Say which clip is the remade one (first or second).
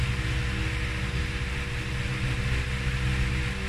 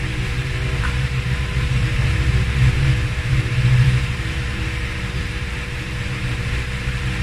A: second